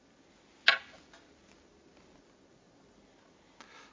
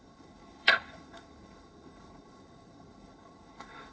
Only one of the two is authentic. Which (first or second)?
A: first